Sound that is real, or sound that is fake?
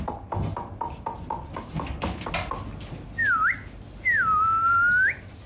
real